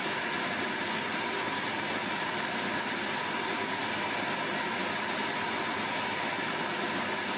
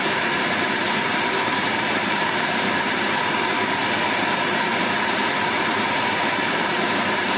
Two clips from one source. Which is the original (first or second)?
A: first